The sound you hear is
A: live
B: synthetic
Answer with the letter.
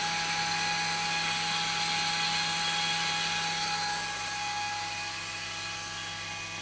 A